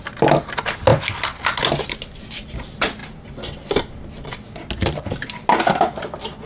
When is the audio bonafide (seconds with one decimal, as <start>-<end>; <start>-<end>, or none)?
0.0-6.5